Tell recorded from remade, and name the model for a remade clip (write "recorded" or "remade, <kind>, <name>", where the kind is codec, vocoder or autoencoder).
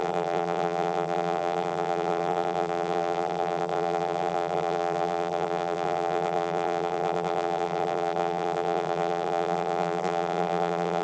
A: remade, vocoder, BigVGAN v2